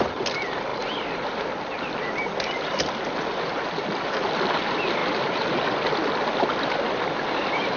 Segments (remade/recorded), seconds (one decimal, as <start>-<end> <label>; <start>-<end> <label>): 0.0-7.8 recorded